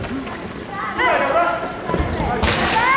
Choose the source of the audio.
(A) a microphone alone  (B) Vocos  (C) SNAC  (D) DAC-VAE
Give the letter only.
A